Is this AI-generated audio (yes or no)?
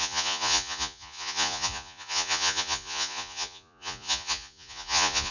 yes